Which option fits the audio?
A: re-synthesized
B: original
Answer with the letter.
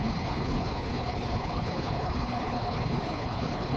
A